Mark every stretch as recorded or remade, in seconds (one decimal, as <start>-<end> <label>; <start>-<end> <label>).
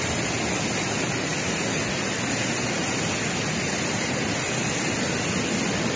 0.0-6.0 recorded